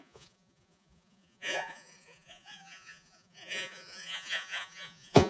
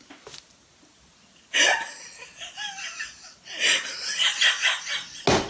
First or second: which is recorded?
second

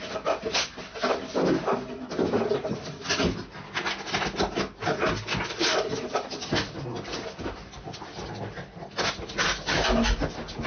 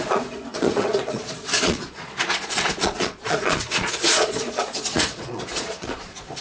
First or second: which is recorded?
first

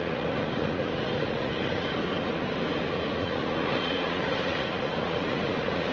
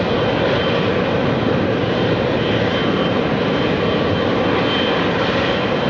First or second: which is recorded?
second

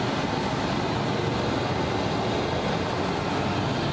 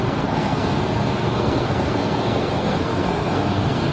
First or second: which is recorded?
first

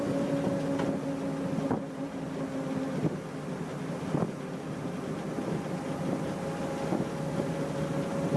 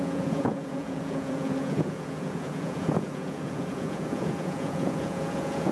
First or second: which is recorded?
first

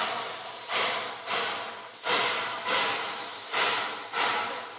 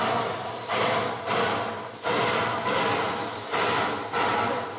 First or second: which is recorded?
second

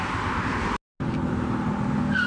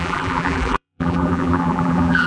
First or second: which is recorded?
first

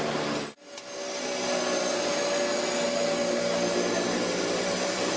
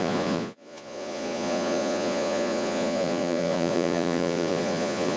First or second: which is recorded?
first